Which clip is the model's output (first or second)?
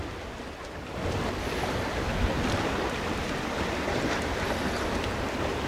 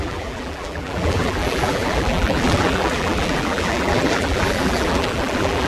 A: second